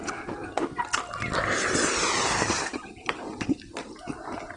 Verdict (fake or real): real